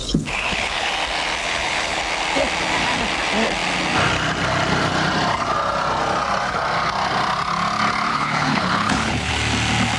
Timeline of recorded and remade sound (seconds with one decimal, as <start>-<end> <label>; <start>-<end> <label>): 0.0-0.9 remade; 0.9-1.4 recorded; 1.4-2.0 remade; 2.0-8.1 recorded; 8.1-9.3 remade; 9.3-10.0 recorded